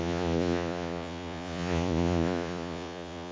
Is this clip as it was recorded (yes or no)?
no